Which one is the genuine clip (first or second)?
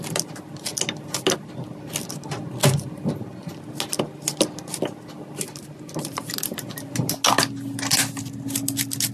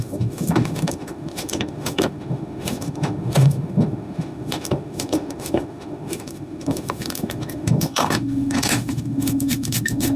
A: first